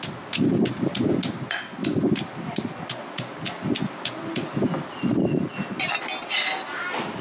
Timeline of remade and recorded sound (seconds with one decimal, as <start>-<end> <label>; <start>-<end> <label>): 0.0-7.2 recorded